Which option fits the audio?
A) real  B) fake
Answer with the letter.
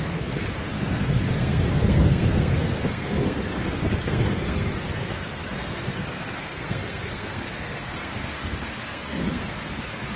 B